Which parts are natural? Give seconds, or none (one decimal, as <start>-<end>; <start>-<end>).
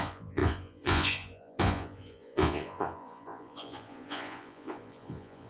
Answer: none